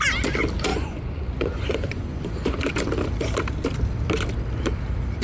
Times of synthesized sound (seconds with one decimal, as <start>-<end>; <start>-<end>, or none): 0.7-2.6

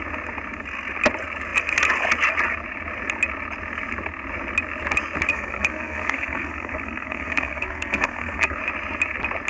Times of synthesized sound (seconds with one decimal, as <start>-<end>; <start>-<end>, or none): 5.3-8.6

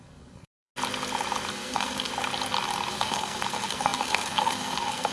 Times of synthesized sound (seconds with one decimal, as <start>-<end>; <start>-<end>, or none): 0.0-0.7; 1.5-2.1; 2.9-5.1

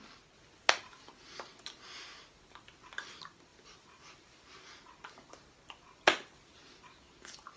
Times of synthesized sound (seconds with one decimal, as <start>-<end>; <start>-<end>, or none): none

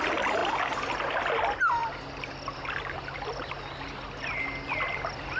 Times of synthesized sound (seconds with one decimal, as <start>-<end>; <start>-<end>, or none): none